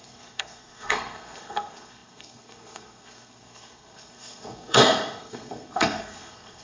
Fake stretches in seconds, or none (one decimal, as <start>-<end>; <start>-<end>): 0.0-6.6